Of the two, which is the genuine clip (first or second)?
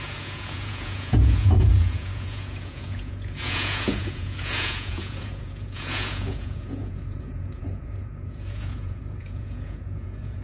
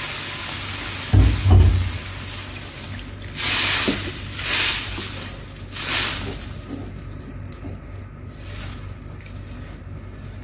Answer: second